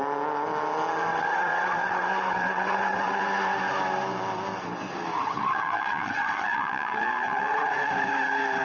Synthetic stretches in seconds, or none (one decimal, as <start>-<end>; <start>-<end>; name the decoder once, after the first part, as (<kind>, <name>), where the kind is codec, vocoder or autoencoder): 1.1-3.2 (vocoder, WaveNeXt); 5.2-7.9